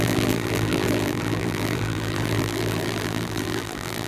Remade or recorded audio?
remade